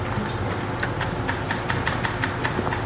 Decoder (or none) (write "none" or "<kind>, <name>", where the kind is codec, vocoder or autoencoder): none